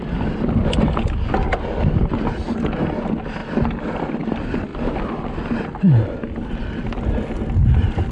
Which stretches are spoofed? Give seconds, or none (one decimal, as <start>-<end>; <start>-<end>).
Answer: none

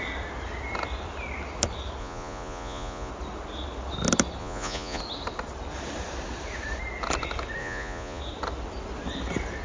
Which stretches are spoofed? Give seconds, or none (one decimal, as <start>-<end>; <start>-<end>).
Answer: 2.0-3.1; 4.4-5.0; 7.6-8.2

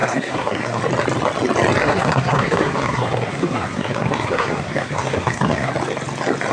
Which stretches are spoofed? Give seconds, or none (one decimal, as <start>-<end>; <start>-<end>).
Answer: 0.0-0.8; 1.8-5.7

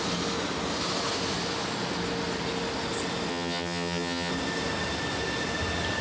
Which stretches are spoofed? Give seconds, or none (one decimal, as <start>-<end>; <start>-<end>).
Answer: 3.3-4.3

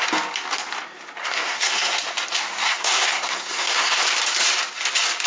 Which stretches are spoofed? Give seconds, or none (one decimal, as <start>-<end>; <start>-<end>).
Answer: 1.2-2.0; 2.6-4.0

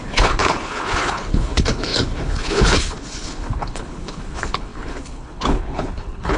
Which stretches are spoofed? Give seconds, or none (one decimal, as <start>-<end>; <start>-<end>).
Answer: 0.0-6.4

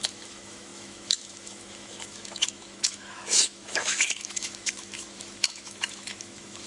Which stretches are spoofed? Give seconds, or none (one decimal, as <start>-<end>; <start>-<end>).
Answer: 0.0-6.7

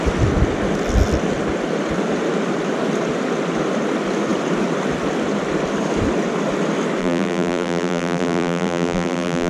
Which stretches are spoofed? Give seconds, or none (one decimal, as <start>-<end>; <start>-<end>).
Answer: 7.0-9.5